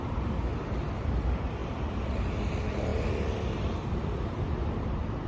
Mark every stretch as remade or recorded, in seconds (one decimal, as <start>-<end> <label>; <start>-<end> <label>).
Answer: 0.0-1.6 recorded; 1.6-2.4 remade; 2.4-5.3 recorded